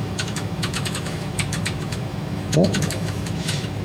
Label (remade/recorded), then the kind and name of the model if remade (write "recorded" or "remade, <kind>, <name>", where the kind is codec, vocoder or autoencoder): remade, autoencoder, DAC-VAE